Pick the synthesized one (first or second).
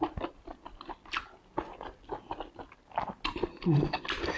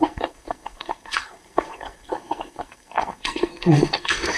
second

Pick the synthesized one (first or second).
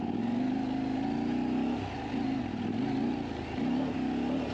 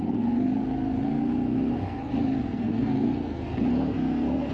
second